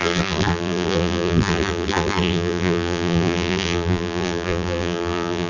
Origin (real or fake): fake